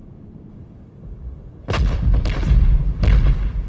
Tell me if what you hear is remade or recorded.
recorded